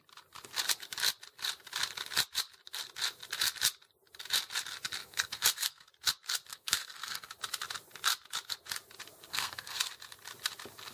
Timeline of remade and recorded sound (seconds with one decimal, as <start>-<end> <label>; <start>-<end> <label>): 0.0-5.0 recorded; 5.0-5.9 remade; 5.9-6.5 recorded; 6.5-7.3 remade; 7.3-9.3 recorded; 9.3-9.9 remade; 9.9-10.9 recorded